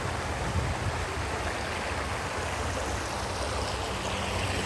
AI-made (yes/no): no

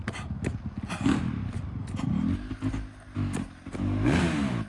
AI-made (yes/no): no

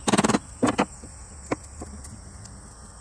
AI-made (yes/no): no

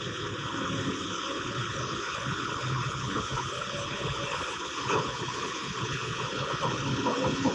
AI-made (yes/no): yes